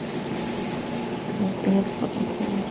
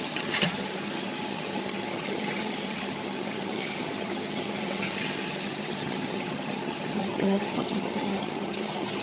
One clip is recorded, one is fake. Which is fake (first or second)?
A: second